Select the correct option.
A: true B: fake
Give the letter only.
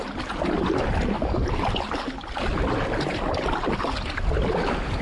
A